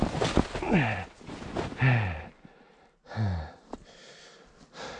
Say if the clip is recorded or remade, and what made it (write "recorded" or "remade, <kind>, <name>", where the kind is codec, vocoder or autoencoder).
recorded